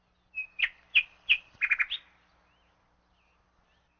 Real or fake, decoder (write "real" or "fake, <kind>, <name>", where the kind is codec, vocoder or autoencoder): real